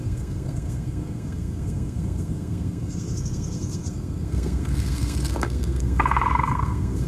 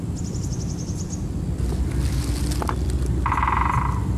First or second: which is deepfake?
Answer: first